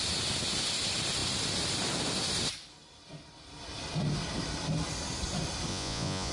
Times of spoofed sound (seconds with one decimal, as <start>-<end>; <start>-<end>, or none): 5.7-6.3